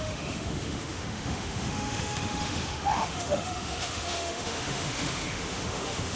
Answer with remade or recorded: remade